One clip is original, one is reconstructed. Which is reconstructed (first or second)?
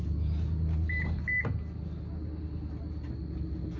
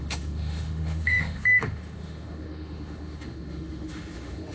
second